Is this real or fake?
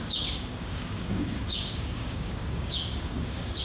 fake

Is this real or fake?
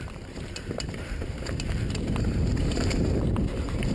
fake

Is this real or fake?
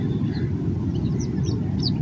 real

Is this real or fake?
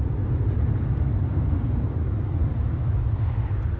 real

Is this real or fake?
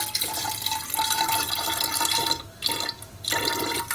real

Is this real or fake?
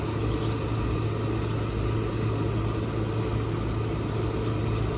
real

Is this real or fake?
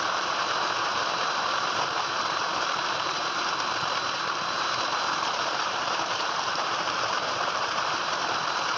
fake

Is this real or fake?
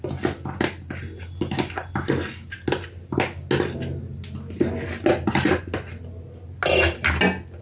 real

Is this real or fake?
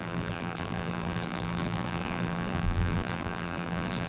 fake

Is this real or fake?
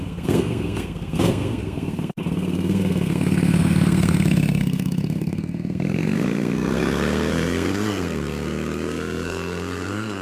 fake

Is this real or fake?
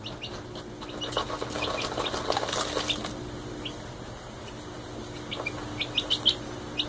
real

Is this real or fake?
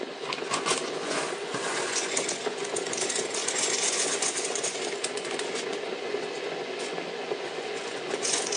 fake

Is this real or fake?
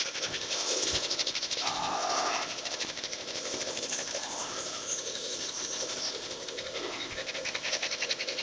fake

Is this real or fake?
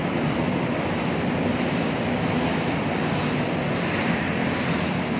real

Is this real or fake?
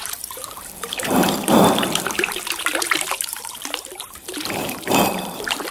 fake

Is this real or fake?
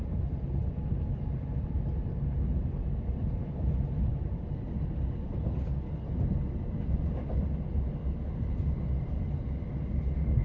real